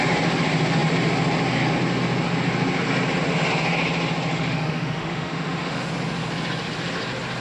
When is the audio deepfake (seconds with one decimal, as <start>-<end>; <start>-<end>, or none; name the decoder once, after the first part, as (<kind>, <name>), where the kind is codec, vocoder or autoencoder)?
4.3-5.9 (autoencoder, DAC-VAE)

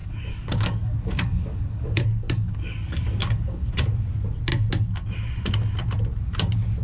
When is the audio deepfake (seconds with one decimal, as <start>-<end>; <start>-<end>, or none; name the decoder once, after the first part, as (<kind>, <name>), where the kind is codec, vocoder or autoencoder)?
0.0-3.7 (codec, DAC)

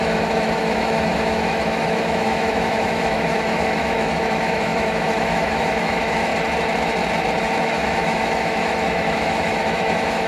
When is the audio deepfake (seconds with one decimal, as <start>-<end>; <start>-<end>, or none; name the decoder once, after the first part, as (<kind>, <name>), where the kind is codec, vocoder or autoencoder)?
0.0-6.3 (autoencoder, DAC-VAE); 7.6-10.3

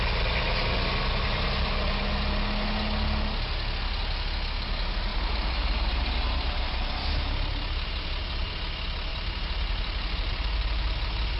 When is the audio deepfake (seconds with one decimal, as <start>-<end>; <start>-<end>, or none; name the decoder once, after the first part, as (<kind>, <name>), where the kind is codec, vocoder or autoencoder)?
5.1-8.6 (vocoder, BigVGAN v2); 9.1-10.3

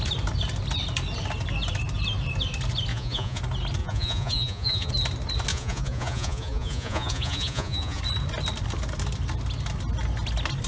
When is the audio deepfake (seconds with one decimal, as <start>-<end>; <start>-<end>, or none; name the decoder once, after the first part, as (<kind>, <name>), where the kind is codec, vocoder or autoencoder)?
2.9-3.4 (vocoder, Vocos); 3.8-4.9; 5.5-8.0

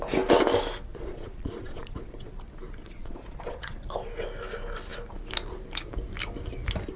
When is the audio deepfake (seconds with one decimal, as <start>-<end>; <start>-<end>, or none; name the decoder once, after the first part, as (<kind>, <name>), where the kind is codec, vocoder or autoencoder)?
0.9-2.3 (vocoder, Vocos); 2.8-3.9

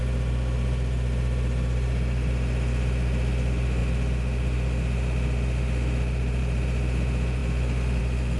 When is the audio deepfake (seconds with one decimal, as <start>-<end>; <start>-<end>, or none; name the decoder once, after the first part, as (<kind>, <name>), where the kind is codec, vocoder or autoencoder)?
none

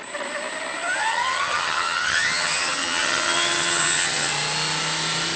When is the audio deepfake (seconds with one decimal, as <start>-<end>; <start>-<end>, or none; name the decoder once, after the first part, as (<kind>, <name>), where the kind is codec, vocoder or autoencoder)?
1.1-4.3 (vocoder, HiFi-GAN)